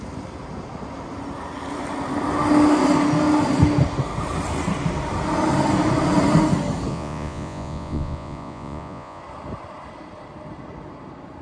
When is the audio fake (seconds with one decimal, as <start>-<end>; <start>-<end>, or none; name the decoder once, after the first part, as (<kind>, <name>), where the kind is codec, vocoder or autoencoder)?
6.9-9.2 (vocoder, Vocos)